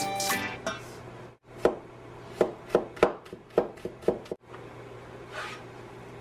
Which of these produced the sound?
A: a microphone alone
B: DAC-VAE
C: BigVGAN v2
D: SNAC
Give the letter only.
A